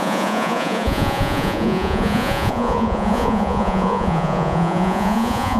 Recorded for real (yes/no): no